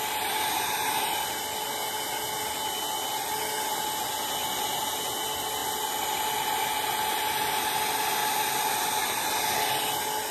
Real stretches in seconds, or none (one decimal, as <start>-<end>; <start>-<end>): 0.0-10.3